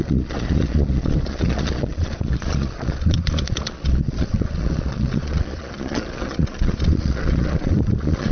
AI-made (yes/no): yes